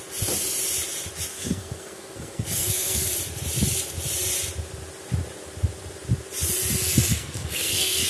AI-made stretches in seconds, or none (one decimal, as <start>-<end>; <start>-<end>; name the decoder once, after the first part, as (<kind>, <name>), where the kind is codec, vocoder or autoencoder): 1.3-3.1 (codec, SNAC); 7.1-8.1